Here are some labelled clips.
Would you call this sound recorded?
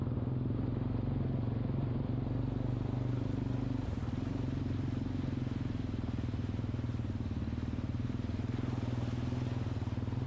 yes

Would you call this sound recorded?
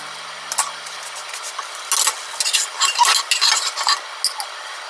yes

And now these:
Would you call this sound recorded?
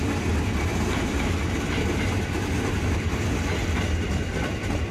yes